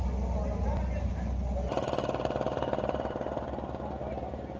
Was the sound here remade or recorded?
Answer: recorded